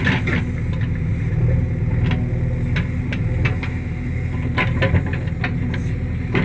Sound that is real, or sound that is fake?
real